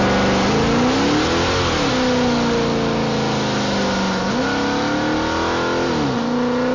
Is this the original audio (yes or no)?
yes